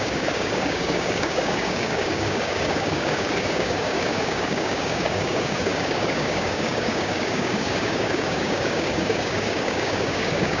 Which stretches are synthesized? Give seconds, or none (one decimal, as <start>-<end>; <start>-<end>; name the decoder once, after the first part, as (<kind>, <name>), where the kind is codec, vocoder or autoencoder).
0.0-10.6 (codec, DAC)